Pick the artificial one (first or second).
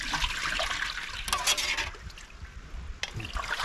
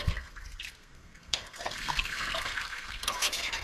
second